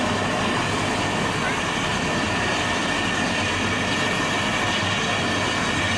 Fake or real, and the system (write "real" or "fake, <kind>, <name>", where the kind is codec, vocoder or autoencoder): real